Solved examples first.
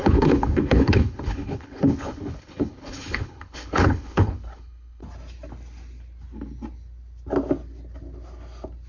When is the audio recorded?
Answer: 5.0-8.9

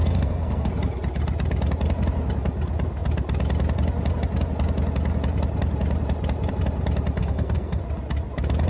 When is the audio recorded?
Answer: 0.7-7.2; 7.8-8.7